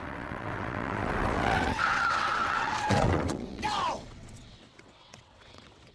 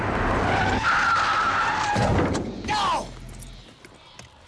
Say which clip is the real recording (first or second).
second